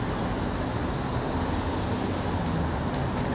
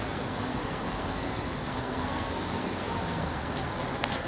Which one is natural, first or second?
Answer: first